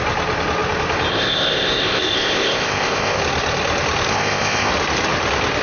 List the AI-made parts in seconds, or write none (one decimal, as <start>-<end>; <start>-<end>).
1.1-3.2; 4.1-4.7